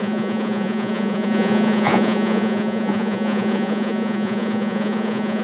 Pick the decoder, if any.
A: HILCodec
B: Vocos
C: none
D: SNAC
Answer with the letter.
B